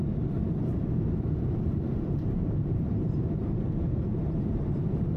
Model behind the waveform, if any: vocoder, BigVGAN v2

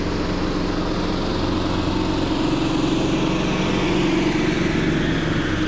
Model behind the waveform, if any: none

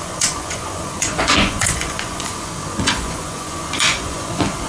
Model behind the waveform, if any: vocoder, Vocos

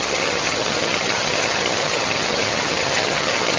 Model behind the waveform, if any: vocoder, HiFi-GAN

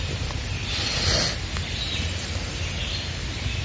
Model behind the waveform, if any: none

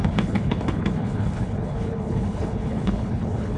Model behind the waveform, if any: codec, HILCodec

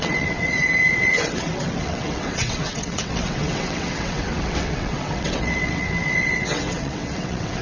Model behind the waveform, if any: vocoder, WaveNeXt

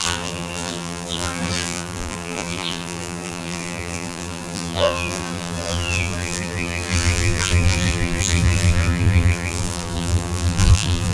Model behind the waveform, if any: vocoder, BigVGAN v2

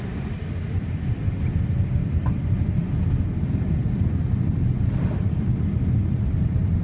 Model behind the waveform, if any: none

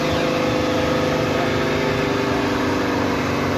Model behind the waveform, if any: none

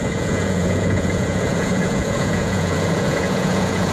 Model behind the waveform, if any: vocoder, Vocos